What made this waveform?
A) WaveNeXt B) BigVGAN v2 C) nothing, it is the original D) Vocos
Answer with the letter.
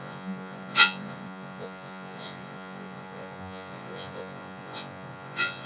D